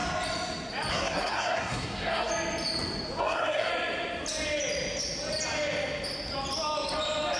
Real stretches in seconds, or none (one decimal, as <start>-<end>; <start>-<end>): 0.0-0.9; 2.3-3.2; 3.7-7.4

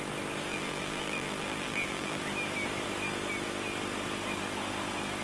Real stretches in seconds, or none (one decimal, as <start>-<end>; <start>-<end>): 0.0-0.5; 2.2-5.2

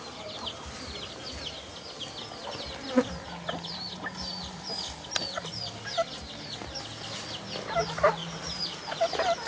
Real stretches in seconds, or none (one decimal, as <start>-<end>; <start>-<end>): 0.0-9.5

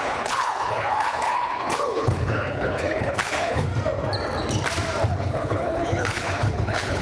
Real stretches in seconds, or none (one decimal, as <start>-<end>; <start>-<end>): 3.7-5.1

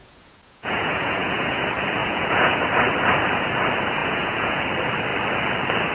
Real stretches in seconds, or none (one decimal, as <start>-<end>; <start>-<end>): 1.6-2.0; 2.6-4.0; 4.6-5.9

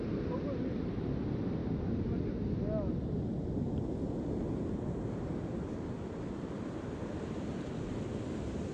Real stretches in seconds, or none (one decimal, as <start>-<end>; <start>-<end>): 0.0-8.7

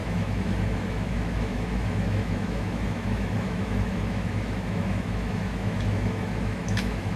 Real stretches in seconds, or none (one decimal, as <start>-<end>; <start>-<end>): none